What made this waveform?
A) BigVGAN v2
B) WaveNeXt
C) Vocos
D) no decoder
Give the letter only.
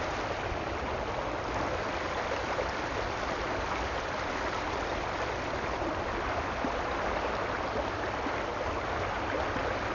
D